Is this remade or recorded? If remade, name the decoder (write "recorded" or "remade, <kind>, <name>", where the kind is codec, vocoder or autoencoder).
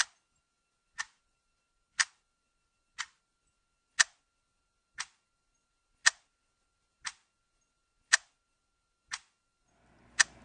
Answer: recorded